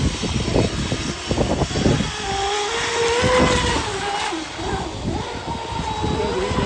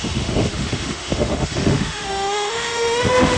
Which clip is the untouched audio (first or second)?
first